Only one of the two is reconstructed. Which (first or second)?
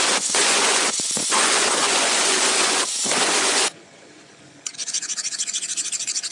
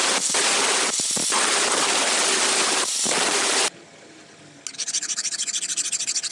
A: first